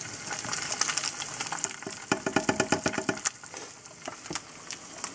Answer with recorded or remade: recorded